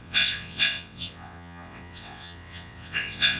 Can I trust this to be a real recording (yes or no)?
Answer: no